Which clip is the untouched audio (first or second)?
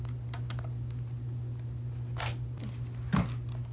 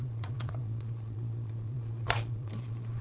first